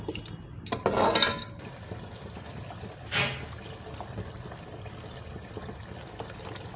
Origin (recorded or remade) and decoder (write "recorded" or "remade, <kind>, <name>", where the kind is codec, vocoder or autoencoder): recorded